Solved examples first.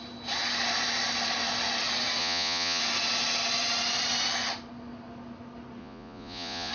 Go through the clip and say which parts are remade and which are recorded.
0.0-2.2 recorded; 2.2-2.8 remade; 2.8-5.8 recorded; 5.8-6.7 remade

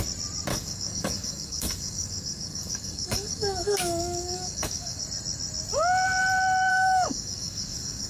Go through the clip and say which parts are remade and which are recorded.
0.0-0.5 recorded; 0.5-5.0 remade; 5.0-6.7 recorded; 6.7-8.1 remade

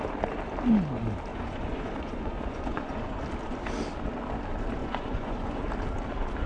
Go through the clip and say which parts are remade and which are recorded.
0.0-1.3 recorded; 1.3-3.2 remade; 3.2-4.8 recorded; 4.8-5.6 remade; 5.6-6.5 recorded